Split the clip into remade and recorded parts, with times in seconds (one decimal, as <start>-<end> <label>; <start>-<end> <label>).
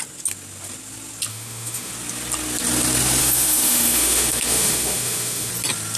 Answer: 0.0-1.3 recorded; 1.3-1.9 remade; 1.9-3.2 recorded; 3.2-5.5 remade; 5.5-6.0 recorded